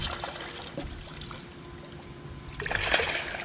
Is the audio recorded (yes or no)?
yes